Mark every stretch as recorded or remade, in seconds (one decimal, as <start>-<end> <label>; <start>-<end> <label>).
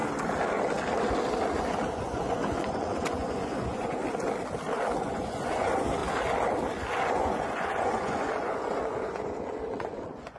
0.0-1.9 recorded; 1.9-4.0 remade; 4.0-5.0 recorded; 5.0-6.0 remade; 6.0-7.1 recorded; 7.1-10.4 remade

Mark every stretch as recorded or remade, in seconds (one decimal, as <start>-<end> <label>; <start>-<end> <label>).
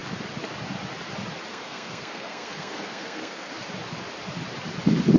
0.0-1.5 recorded; 1.5-3.5 remade; 3.5-5.2 recorded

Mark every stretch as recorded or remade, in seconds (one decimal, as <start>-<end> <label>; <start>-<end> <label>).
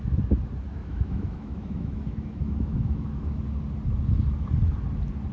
0.0-0.8 recorded; 0.8-3.4 remade; 3.4-5.3 recorded